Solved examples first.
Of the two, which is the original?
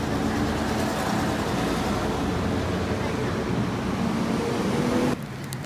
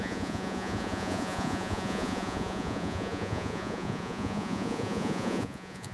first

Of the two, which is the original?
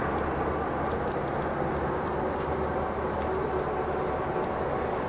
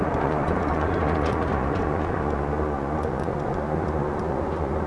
first